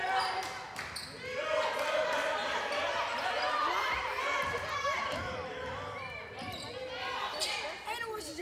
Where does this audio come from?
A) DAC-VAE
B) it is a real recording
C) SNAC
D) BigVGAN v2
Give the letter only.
B